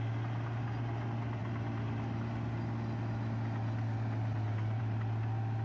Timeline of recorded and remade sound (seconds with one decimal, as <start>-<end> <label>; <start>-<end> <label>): 0.0-5.6 recorded